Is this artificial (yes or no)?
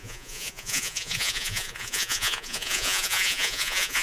yes